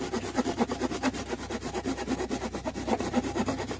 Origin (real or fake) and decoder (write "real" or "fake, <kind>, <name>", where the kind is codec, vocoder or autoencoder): real